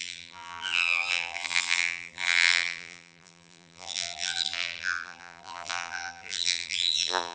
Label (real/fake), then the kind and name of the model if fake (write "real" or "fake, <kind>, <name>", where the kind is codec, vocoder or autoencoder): fake, vocoder, BigVGAN v2